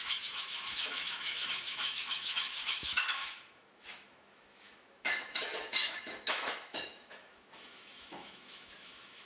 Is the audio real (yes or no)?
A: no